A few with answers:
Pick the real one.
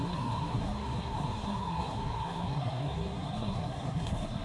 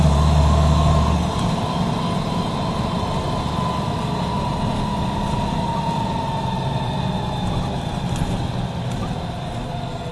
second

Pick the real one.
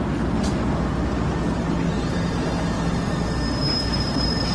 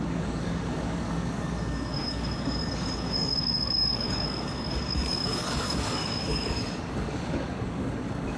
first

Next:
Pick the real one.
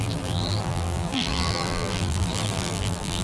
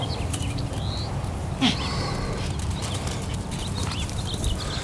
second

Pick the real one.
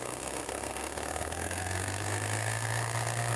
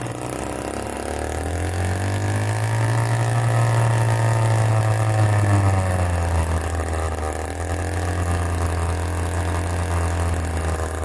second